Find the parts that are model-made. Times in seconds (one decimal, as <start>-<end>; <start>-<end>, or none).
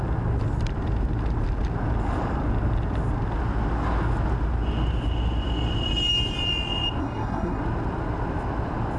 7.0-7.6